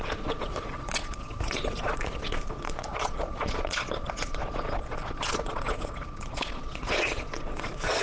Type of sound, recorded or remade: remade